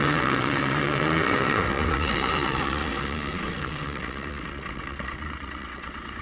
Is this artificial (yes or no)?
yes